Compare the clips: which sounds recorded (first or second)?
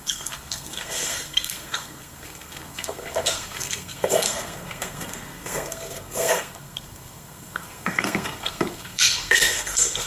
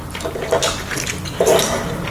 second